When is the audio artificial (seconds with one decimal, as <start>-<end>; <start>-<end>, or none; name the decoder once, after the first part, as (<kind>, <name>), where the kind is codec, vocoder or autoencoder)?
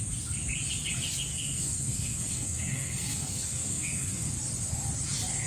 1.3-4.3 (codec, SNAC)